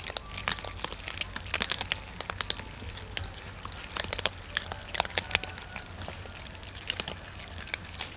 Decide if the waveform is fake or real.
real